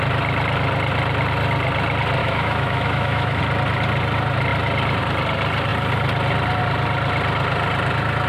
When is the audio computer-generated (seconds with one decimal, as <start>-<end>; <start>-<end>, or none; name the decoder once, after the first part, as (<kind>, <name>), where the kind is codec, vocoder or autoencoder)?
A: 2.2-3.4 (autoencoder, DAC-VAE)